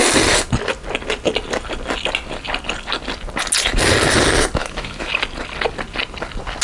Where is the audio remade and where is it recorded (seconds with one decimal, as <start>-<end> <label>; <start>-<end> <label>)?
0.0-4.6 recorded; 4.6-5.1 remade; 5.1-6.6 recorded